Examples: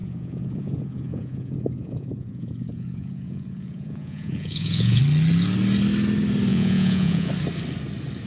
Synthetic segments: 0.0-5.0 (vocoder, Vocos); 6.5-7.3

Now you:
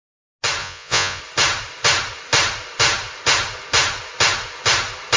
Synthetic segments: 0.6-1.2 (vocoder, Vocos)

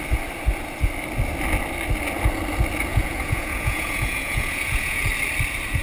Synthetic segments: 2.9-5.0 (vocoder, Vocos)

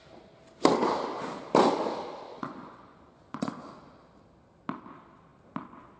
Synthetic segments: 2.3-3.7 (vocoder, Vocos)

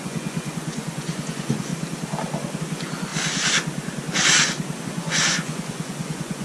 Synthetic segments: 0.0-1.7 (vocoder, Vocos); 2.6-3.1; 4.8-6.4